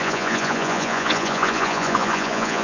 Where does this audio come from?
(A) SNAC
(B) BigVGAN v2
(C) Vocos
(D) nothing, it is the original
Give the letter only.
C